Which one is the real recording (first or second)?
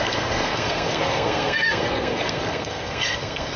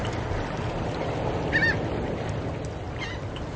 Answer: second